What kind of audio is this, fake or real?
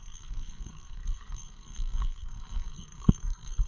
fake